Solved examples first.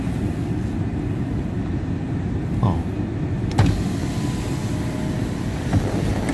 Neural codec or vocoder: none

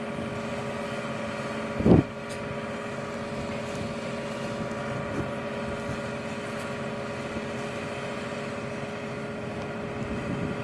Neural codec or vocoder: none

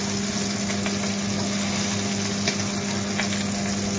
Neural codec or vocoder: none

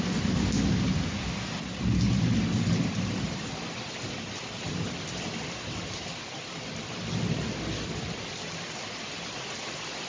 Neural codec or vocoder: none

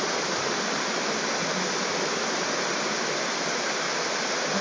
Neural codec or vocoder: none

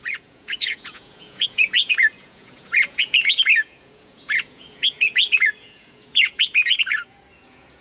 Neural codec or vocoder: vocoder, Vocos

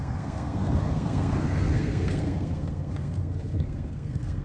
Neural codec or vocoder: codec, SNAC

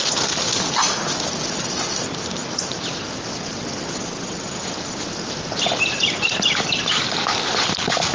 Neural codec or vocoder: none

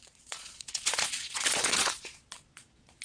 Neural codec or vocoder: vocoder, Vocos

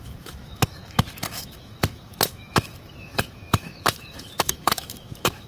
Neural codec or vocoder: autoencoder, DAC-VAE